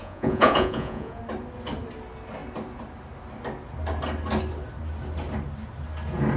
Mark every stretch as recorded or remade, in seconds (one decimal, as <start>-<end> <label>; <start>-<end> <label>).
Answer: 0.0-1.2 remade; 1.2-6.4 recorded